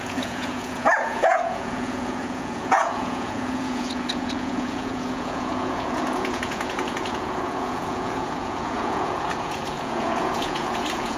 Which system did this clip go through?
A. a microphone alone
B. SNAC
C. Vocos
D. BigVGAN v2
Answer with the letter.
C